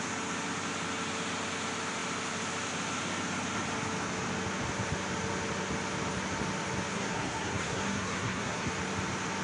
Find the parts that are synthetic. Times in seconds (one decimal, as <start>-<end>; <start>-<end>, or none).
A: 6.9-8.7